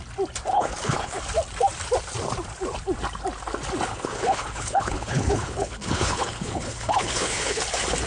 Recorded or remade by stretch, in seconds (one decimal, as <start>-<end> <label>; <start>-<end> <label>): 0.0-0.5 recorded; 0.5-1.2 remade; 1.2-3.9 recorded; 3.9-7.6 remade; 7.6-8.1 recorded